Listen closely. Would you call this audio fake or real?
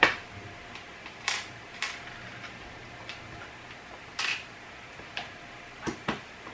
fake